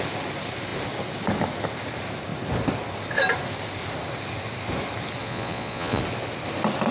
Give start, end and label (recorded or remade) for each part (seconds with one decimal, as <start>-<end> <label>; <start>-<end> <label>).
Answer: 0.0-5.2 recorded; 5.2-6.0 remade; 6.0-6.9 recorded